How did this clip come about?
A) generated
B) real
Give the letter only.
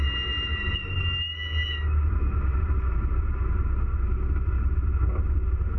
B